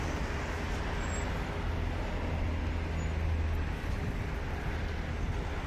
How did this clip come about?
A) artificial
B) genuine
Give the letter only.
B